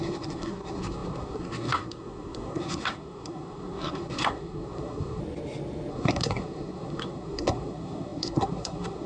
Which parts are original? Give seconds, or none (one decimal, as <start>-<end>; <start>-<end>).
5.2-5.9